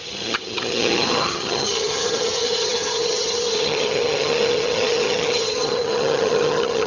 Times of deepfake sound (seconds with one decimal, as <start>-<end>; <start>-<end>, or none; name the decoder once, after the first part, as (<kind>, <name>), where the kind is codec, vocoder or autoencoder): 0.0-6.9 (vocoder, HiFi-GAN)